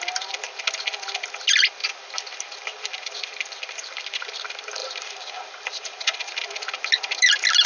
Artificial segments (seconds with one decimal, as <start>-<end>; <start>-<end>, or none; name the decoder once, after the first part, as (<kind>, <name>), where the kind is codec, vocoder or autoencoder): 4.8-6.3 (vocoder, BigVGAN v2)